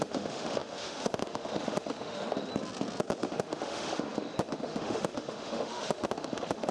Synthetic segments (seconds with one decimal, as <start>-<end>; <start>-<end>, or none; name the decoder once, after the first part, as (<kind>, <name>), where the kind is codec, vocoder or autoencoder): 0.0-2.5 (autoencoder, DAC-VAE); 3.3-6.7